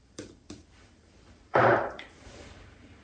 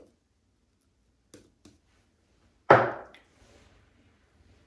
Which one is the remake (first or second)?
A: first